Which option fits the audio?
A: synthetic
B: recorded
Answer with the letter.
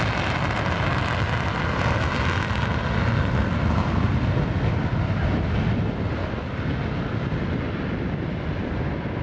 B